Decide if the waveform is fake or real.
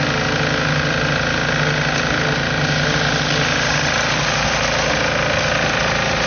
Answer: real